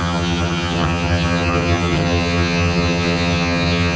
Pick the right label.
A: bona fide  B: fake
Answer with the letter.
B